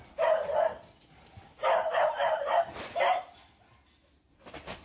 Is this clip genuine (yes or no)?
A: yes